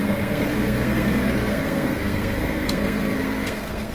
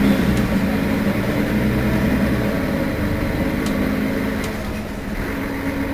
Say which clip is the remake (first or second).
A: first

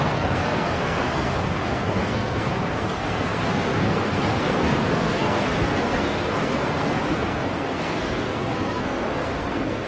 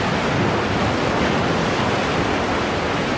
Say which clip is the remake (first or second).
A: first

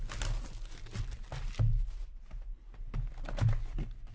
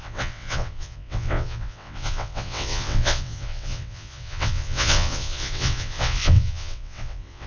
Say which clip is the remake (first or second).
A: second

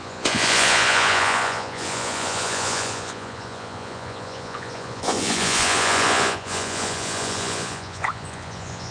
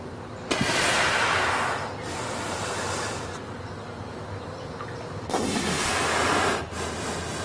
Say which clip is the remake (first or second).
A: first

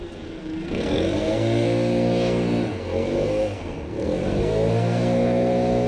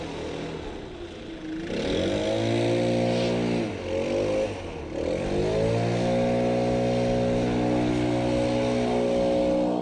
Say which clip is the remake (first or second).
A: first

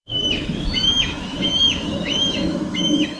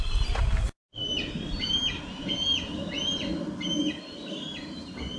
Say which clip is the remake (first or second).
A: first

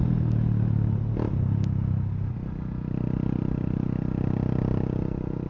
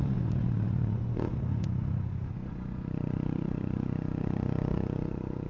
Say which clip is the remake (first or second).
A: second